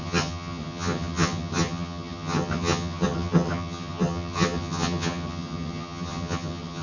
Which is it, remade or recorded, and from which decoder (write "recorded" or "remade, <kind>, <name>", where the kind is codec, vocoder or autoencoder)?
remade, vocoder, HiFi-GAN